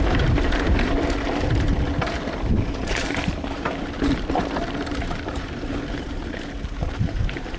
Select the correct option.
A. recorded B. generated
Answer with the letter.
B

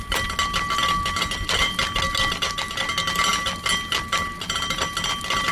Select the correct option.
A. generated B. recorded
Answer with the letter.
B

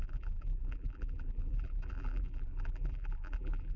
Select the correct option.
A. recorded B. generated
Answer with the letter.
B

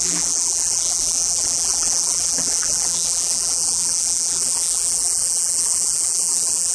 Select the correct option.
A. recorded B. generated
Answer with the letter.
B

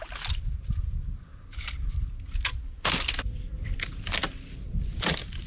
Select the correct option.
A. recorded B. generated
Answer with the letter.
A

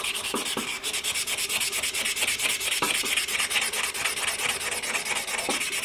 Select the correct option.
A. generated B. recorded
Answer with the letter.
B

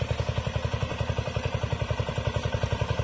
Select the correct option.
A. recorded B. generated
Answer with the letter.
B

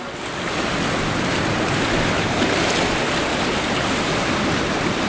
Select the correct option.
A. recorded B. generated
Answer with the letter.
A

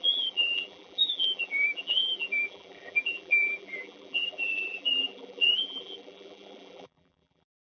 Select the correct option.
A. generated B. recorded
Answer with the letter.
A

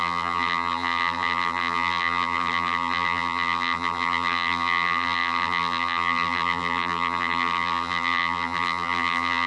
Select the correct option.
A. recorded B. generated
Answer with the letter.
B